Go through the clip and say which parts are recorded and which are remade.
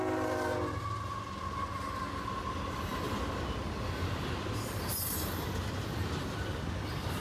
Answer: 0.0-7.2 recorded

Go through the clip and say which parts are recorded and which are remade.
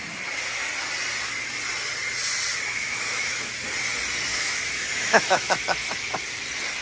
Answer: 0.0-2.5 recorded; 2.5-3.5 remade; 3.5-4.3 recorded; 4.3-5.9 remade; 5.9-6.8 recorded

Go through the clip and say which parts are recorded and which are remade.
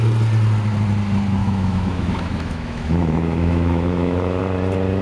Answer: 0.0-1.4 recorded; 1.4-4.4 remade; 4.4-5.0 recorded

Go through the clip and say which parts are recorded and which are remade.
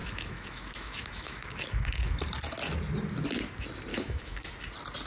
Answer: 0.0-2.2 remade; 2.2-3.9 recorded; 3.9-4.5 remade; 4.5-5.1 recorded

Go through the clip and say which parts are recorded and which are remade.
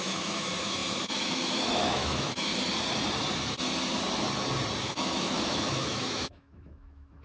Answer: 0.0-2.5 remade; 2.5-4.8 recorded; 4.8-7.2 remade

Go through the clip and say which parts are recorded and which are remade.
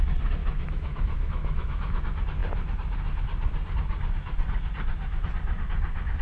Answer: 0.0-0.4 recorded; 0.4-2.0 remade; 2.0-6.2 recorded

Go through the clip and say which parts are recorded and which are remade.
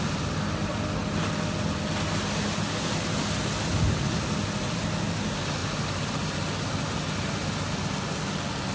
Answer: 0.0-8.7 recorded